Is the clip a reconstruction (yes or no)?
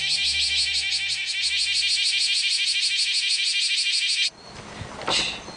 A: no